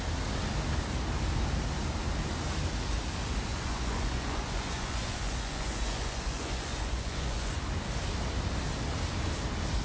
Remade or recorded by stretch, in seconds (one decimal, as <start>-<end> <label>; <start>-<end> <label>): 0.0-3.5 recorded; 3.5-7.6 remade; 7.6-9.8 recorded